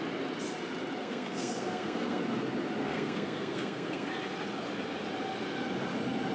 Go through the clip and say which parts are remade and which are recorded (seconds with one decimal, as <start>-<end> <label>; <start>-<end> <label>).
0.0-1.0 recorded; 1.0-2.2 remade; 2.2-2.8 recorded; 2.8-4.1 remade; 4.1-6.3 recorded